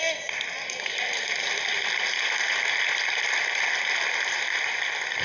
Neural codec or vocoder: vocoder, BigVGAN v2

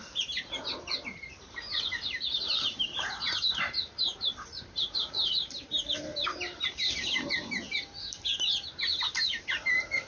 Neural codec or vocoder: vocoder, BigVGAN v2